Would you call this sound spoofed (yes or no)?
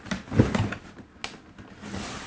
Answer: no